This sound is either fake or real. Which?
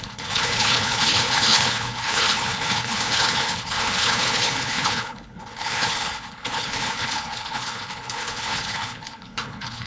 fake